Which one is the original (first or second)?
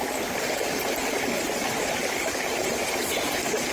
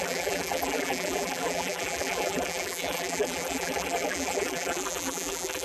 first